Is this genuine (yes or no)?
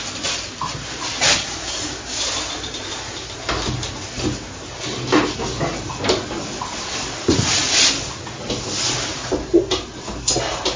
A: yes